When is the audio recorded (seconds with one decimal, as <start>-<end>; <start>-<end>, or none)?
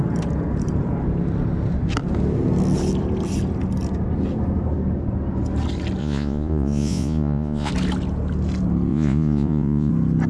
0.0-6.0; 7.7-8.9; 9.9-10.3